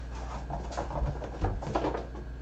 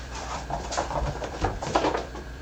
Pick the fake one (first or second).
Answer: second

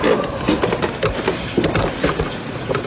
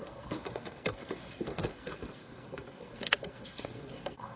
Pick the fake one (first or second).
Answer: second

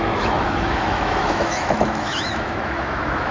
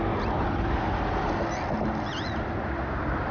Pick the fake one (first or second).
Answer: first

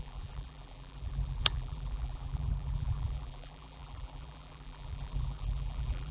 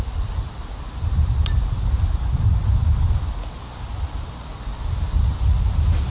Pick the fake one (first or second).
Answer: first